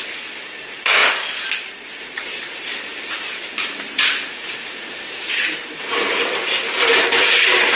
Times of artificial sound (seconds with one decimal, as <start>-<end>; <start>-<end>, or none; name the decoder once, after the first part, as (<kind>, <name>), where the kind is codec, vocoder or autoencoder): 0.0-1.0 (vocoder, BigVGAN v2); 2.0-7.8